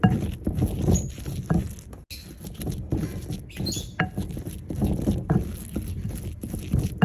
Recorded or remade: recorded